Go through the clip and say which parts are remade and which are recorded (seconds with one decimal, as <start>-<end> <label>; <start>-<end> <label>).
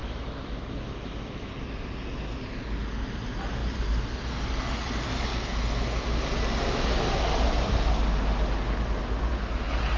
0.0-1.5 remade; 1.5-10.0 recorded